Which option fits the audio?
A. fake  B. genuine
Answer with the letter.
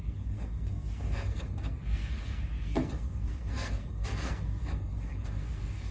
A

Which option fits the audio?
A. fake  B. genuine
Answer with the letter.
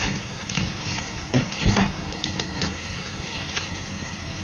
A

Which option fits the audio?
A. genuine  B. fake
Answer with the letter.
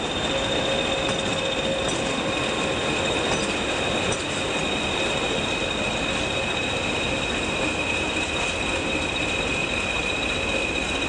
A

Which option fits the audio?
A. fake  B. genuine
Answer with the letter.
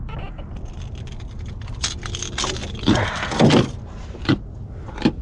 B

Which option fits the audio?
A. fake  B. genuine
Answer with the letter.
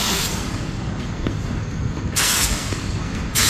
A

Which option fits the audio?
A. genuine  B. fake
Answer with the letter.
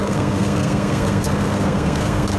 B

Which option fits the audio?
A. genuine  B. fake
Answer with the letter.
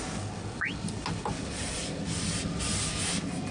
A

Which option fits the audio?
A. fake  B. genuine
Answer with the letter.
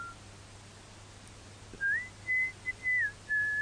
B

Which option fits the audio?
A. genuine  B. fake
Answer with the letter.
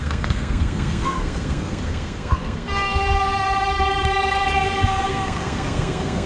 B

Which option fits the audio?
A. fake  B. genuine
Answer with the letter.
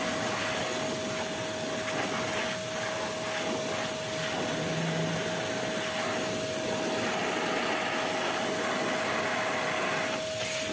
B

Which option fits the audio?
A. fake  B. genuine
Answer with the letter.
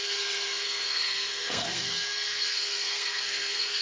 A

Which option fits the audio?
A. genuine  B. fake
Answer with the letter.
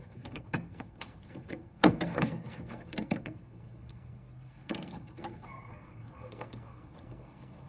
B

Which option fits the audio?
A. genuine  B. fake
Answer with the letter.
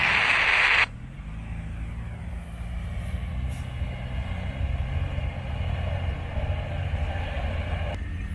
A